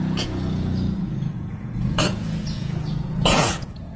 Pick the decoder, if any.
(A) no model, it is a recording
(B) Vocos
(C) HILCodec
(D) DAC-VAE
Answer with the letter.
B